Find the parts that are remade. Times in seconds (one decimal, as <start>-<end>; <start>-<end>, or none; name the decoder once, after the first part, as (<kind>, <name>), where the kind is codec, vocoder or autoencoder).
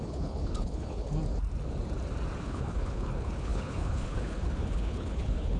0.0-1.1 (codec, HILCodec); 2.4-5.6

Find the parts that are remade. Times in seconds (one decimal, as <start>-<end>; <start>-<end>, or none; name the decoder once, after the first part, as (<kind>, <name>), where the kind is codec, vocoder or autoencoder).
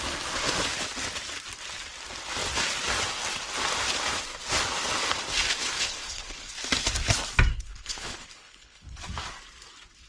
5.6-6.5 (codec, HILCodec); 7.5-9.0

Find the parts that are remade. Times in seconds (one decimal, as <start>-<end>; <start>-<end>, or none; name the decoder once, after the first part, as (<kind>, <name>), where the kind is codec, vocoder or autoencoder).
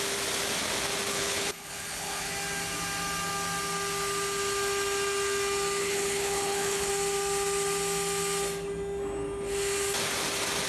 1.1-2.3 (codec, HILCodec); 5.8-6.9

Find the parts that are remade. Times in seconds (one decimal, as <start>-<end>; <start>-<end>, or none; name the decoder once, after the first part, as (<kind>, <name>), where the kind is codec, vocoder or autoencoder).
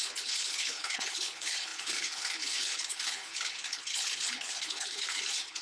0.0-5.6 (codec, HILCodec)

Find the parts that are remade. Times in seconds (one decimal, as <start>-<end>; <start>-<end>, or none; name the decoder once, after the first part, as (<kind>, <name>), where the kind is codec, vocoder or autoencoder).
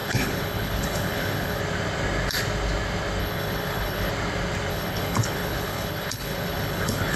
0.0-1.6 (codec, HILCodec); 3.2-4.1; 4.7-7.2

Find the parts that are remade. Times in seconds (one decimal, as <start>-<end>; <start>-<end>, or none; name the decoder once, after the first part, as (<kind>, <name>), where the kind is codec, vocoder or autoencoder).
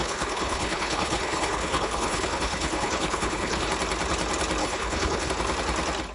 0.0-3.7 (codec, HILCodec); 4.6-5.3